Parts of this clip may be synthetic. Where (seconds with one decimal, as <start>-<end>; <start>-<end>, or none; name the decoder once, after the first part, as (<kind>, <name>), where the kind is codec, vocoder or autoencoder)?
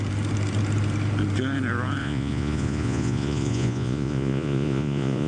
2.0-5.3 (vocoder, Vocos)